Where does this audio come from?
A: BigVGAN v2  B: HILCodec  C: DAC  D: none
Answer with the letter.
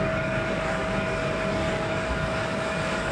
C